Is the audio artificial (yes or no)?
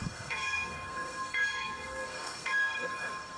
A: yes